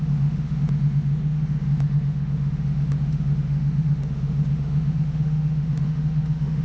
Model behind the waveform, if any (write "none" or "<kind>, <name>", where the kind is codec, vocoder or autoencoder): autoencoder, DAC-VAE